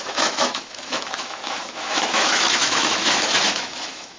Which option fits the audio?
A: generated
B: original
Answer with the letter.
A